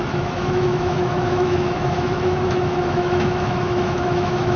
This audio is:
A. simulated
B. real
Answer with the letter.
A